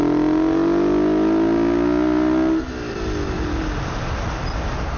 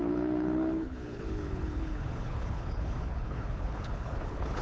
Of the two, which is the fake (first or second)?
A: second